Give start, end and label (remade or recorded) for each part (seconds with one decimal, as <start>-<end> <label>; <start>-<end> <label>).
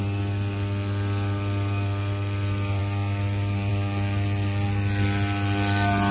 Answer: 0.0-6.1 recorded